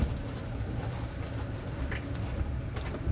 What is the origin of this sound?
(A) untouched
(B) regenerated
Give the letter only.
A